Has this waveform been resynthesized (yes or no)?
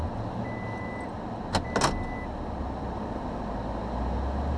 no